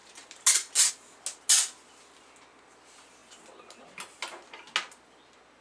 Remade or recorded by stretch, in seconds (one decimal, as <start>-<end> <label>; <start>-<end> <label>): 0.0-5.6 recorded